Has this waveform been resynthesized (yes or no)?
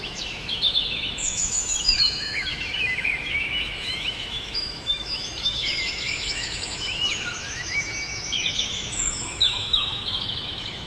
yes